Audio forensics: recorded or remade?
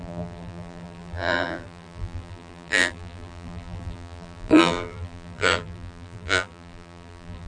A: remade